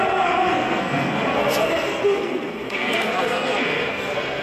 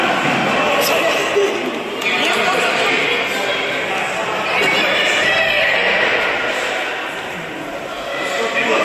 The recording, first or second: second